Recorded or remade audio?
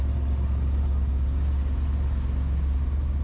recorded